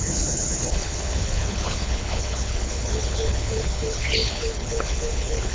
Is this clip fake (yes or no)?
yes